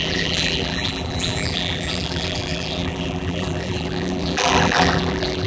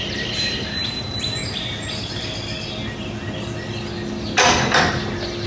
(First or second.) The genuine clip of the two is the second